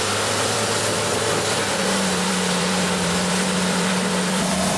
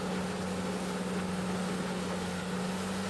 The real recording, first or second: second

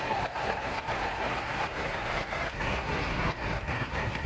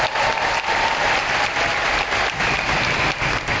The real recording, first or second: second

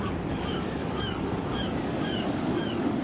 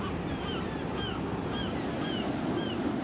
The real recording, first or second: second